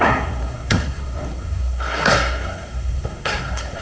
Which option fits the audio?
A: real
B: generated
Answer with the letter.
B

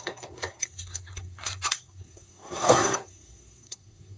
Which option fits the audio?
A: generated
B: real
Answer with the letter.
A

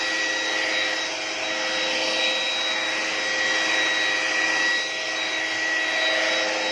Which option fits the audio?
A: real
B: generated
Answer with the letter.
A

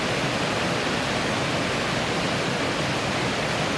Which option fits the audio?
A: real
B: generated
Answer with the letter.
A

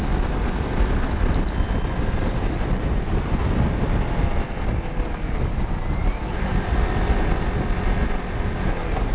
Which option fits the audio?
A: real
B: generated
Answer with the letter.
A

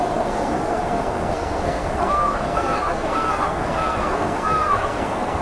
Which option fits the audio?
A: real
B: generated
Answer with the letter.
B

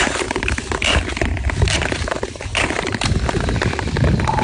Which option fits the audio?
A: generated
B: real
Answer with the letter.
B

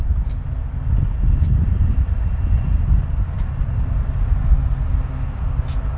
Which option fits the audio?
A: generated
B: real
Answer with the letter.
B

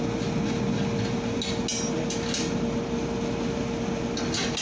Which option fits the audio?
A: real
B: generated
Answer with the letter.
A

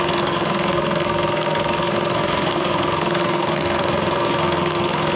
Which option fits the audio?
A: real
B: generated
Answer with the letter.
B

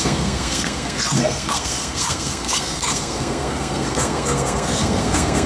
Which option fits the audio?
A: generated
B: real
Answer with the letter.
A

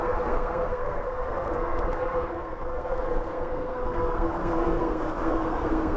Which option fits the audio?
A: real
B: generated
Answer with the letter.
B